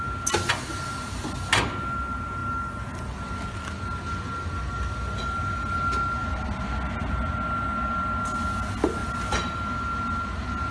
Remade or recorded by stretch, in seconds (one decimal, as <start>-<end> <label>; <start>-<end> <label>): 0.0-10.7 recorded